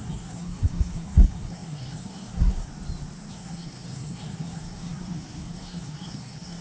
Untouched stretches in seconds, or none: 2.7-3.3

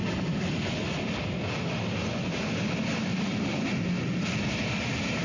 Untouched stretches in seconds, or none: 0.0-5.2

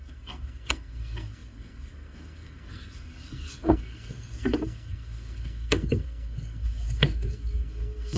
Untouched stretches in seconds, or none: none

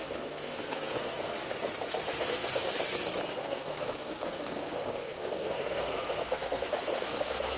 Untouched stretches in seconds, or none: 2.6-3.4

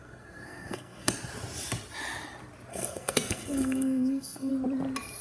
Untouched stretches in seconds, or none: 1.1-2.7; 4.5-5.2

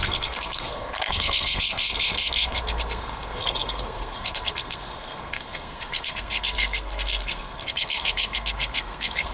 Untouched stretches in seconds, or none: none

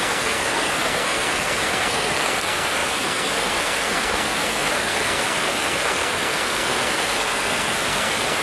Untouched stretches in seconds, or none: none